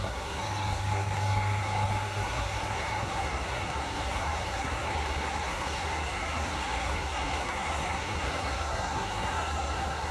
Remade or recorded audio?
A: remade